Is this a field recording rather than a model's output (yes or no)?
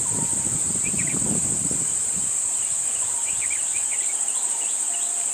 yes